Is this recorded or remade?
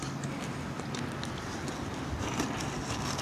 recorded